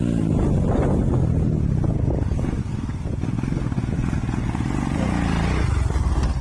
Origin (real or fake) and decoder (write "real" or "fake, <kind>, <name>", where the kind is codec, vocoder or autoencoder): real